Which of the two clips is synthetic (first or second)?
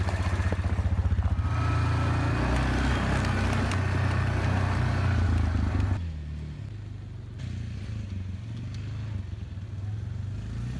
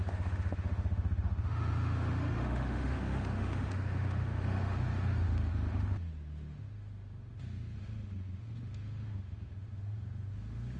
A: second